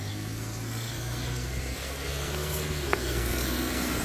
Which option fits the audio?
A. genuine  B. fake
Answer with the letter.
B